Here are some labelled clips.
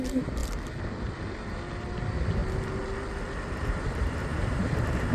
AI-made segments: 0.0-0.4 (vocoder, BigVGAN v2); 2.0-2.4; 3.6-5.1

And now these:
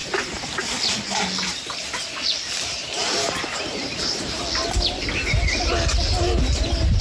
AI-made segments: 2.8-4.4 (vocoder, BigVGAN v2)

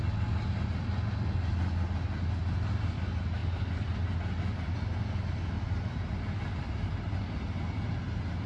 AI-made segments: none

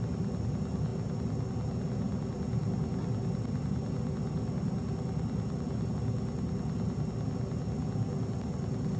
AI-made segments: none

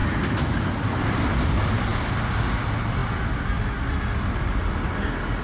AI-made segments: 0.0-1.2 (vocoder, BigVGAN v2)

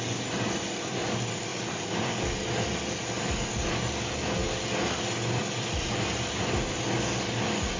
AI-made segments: 1.5-2.4 (vocoder, BigVGAN v2); 5.4-6.8

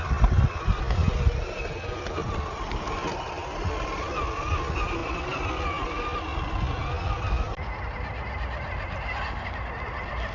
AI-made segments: none